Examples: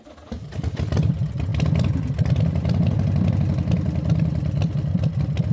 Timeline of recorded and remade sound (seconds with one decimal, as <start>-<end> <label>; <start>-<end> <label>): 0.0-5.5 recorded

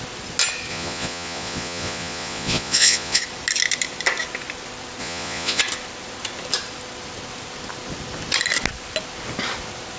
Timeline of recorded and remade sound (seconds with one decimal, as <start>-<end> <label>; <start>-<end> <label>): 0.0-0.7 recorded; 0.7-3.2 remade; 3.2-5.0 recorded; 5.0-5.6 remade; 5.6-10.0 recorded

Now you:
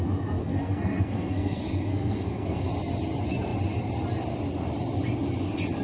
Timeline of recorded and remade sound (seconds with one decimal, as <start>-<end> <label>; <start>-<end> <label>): 0.0-0.4 recorded; 0.4-2.7 remade; 2.7-5.8 recorded